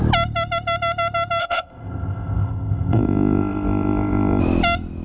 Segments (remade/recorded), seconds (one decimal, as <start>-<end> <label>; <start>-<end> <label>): 0.0-1.4 recorded; 1.4-4.4 remade; 4.4-5.0 recorded